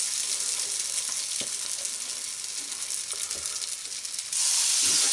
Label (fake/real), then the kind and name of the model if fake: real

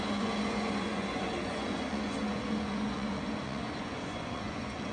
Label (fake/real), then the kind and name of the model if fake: fake, vocoder, Vocos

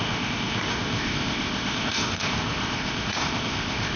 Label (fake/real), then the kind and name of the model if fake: fake, codec, ZipCodec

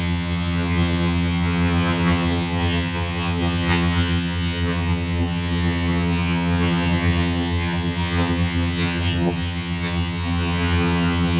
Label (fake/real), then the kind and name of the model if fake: fake, vocoder, HiFi-GAN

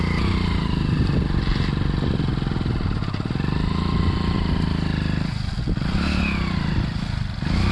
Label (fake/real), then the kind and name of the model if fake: real